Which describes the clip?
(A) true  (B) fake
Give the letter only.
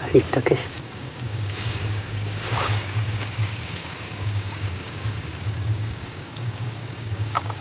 B